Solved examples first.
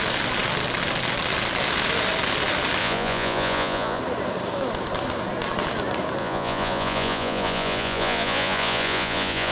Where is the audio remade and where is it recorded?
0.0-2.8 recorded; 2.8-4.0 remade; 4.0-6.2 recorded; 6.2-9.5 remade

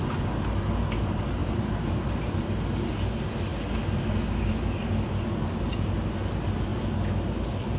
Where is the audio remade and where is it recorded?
0.0-1.4 recorded; 1.4-2.3 remade; 2.3-7.8 recorded

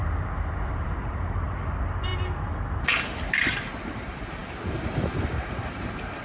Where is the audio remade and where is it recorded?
0.0-0.7 recorded; 0.7-2.1 remade; 2.1-3.3 recorded; 3.3-6.2 remade

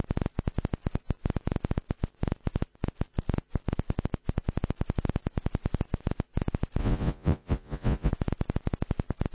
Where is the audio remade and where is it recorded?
0.0-6.8 recorded; 6.8-8.1 remade; 8.1-9.3 recorded

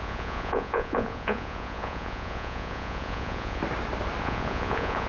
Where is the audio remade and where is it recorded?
0.0-3.6 remade; 3.6-4.2 recorded; 4.2-5.1 remade

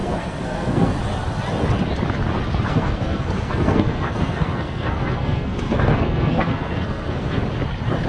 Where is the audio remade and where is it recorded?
0.0-0.9 remade; 0.9-2.7 recorded; 2.7-7.4 remade; 7.4-8.1 recorded

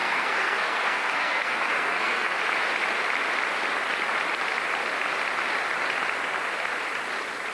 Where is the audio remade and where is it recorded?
0.0-2.4 remade; 2.4-7.5 recorded